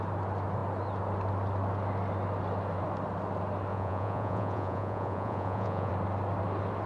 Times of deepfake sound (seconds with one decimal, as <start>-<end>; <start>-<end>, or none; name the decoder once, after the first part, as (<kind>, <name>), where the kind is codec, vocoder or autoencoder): 3.7-5.9 (vocoder, Vocos)